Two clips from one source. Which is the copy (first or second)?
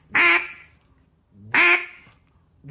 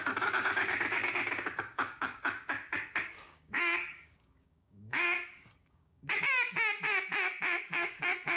second